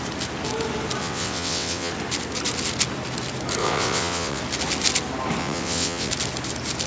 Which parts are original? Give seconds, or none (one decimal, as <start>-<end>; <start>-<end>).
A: 0.0-1.0; 1.9-3.6; 4.4-5.4; 6.1-6.9